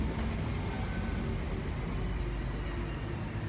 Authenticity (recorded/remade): recorded